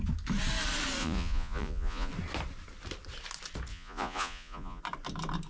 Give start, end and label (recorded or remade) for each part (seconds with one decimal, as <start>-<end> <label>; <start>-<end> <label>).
0.0-1.0 recorded; 1.0-2.1 remade; 2.1-3.7 recorded; 3.7-4.8 remade; 4.8-5.5 recorded